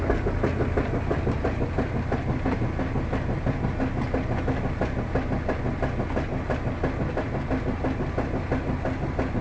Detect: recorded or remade recorded